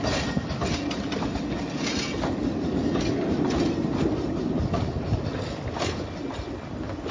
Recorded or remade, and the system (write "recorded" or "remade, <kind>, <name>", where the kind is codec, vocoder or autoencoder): recorded